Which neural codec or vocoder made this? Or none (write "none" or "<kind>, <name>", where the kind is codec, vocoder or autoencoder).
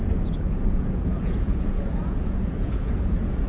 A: vocoder, Vocos